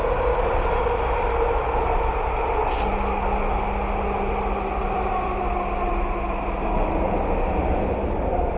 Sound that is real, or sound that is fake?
real